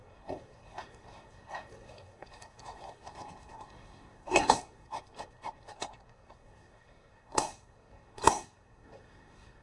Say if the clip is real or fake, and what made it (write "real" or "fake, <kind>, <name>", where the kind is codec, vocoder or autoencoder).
fake, codec, SNAC